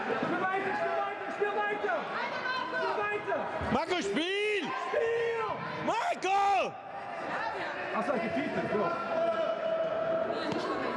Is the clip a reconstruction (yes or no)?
no